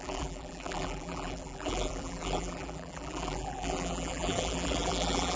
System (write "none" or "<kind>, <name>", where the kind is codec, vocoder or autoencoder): vocoder, BigVGAN v2